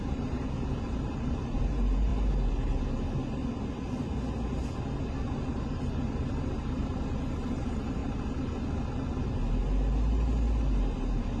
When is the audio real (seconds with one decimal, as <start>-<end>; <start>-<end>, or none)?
2.1-5.5; 8.0-10.8